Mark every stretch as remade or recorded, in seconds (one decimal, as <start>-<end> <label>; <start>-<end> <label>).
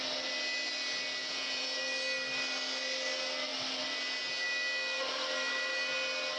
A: 0.0-1.2 recorded; 1.2-1.8 remade; 1.8-6.4 recorded